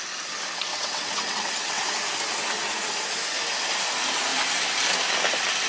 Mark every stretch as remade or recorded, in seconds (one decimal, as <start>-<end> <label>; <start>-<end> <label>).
0.0-0.7 recorded; 0.7-1.8 remade; 1.8-5.7 recorded